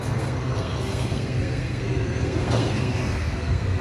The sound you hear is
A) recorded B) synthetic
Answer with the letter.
B